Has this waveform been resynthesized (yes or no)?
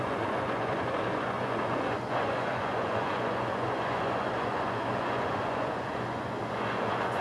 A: yes